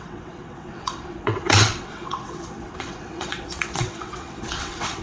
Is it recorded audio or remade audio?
remade